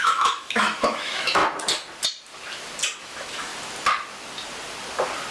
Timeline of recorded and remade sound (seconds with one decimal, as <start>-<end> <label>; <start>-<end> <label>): 0.0-1.4 remade; 1.4-3.0 recorded; 3.0-3.5 remade; 3.5-5.3 recorded